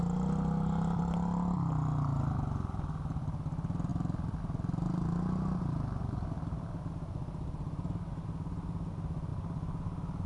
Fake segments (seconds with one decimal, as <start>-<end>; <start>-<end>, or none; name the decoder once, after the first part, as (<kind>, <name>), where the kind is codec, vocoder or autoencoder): none